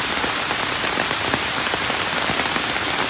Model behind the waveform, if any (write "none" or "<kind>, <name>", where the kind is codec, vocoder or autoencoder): none